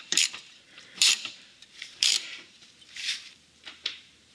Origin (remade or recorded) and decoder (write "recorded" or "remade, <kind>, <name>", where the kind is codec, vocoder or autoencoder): remade, vocoder, BigVGAN v2